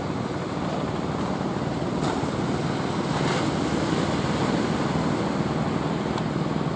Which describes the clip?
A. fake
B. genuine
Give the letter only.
B